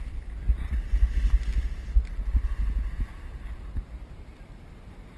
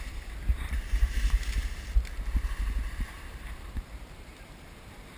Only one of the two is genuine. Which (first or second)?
first